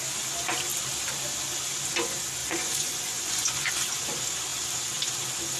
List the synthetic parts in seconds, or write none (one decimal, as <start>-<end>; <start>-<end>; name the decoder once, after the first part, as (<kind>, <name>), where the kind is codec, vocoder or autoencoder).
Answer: 2.4-3.7 (vocoder, Vocos)